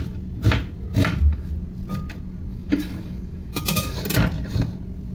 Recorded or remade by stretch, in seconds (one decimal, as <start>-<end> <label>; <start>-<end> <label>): 0.0-0.9 recorded; 0.9-1.5 remade; 1.5-2.5 recorded; 2.5-4.0 remade; 4.0-5.1 recorded